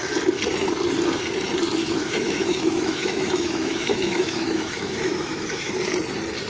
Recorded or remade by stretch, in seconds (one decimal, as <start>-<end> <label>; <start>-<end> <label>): 0.0-1.8 recorded; 1.8-5.7 remade; 5.7-6.5 recorded